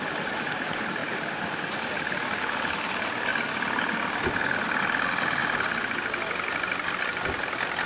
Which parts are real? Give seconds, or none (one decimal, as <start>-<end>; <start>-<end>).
0.0-7.9